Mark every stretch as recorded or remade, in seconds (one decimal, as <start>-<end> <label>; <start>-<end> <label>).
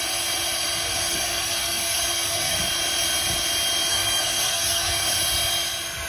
0.0-1.1 recorded; 1.1-2.6 remade; 2.6-3.9 recorded; 3.9-5.2 remade; 5.2-6.1 recorded